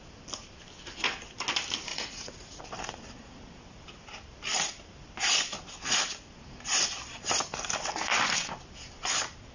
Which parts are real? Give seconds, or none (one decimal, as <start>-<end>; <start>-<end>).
0.0-1.9; 2.6-9.5